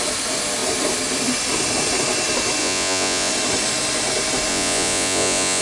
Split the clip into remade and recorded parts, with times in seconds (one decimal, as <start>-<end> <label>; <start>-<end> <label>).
0.0-2.6 recorded; 2.6-3.3 remade; 3.3-4.5 recorded; 4.5-5.6 remade